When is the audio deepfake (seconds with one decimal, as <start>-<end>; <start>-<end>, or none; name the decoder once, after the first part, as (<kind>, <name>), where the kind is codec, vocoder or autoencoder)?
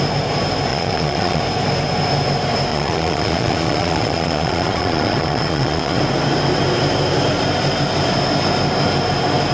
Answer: 0.7-1.4 (vocoder, Vocos); 2.7-6.0